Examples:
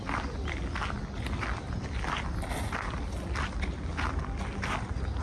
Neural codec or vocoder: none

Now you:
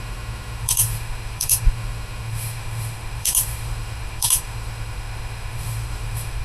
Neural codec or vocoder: autoencoder, DAC-VAE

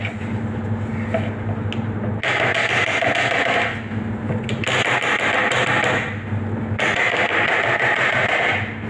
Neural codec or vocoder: none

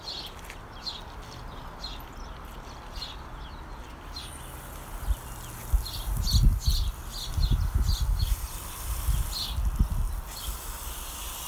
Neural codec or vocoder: none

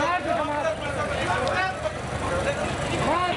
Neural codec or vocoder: none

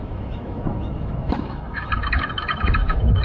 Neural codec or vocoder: autoencoder, DAC-VAE